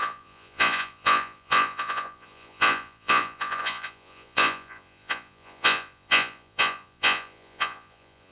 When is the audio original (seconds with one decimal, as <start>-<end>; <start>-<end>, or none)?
none